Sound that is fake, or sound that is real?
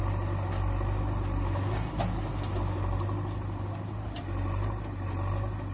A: real